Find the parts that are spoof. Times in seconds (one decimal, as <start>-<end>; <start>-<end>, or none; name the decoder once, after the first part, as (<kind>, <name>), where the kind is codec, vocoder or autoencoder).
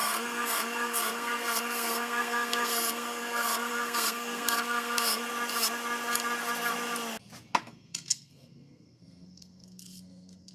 0.0-5.3 (codec, SNAC); 7.6-10.5